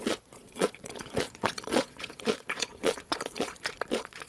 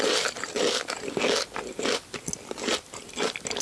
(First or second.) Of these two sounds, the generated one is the first